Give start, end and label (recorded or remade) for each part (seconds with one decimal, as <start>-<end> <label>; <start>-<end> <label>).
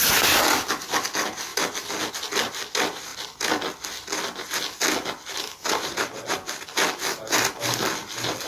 0.0-8.5 recorded